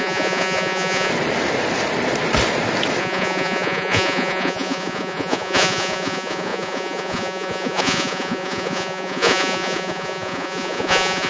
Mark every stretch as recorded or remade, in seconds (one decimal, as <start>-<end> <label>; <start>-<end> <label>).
0.0-1.1 remade; 1.1-3.0 recorded; 3.0-11.3 remade

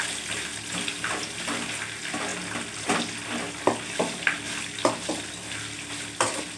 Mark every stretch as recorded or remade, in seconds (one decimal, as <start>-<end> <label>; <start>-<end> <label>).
0.0-6.6 recorded

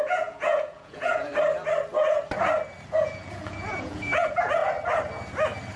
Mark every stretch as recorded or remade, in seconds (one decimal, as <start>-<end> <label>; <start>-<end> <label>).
0.0-1.3 remade; 1.3-2.9 recorded; 2.9-4.6 remade; 4.6-5.8 recorded

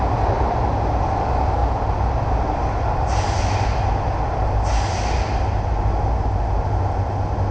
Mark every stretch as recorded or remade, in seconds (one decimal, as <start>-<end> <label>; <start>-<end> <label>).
0.0-7.5 recorded